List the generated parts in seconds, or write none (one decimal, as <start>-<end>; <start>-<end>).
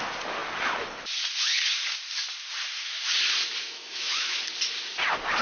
3.6-4.4